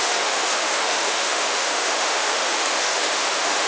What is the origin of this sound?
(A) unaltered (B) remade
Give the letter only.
B